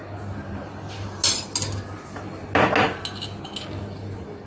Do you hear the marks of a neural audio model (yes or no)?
no